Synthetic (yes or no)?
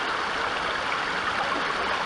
no